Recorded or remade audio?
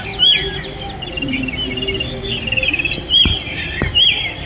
recorded